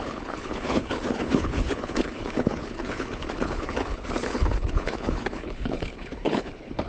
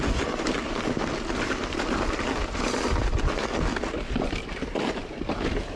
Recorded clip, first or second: second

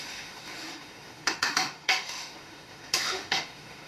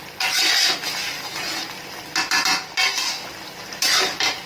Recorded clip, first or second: second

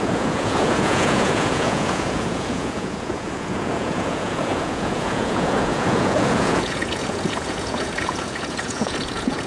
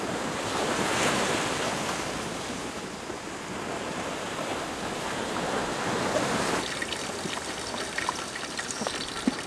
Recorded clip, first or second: second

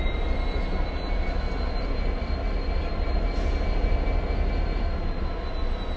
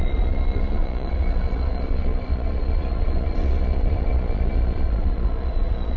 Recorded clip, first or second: first